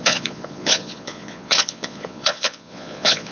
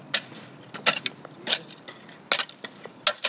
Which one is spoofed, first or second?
first